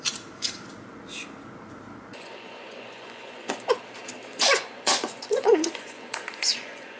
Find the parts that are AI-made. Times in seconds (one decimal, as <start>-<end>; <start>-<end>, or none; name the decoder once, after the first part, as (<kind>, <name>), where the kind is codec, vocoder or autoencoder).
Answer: 2.1-3.8 (vocoder, Vocos); 4.3-7.0